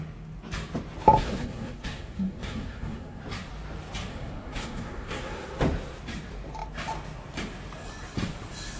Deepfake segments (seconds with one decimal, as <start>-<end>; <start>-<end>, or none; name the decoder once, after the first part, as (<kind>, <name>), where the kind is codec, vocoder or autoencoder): 1.2-3.2 (codec, SNAC); 4.1-5.6